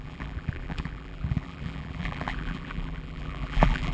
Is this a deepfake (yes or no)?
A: yes